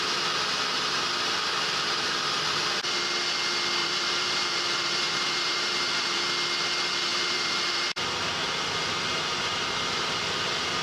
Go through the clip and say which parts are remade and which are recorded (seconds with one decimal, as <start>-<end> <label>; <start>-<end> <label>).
0.0-3.8 recorded; 3.8-6.2 remade; 6.2-7.1 recorded; 7.1-8.0 remade; 8.0-10.8 recorded